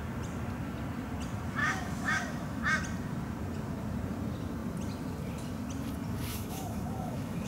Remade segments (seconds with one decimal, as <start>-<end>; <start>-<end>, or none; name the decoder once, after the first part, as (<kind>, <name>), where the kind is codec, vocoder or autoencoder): 1.6-2.6 (autoencoder, DAC-VAE); 6.3-7.5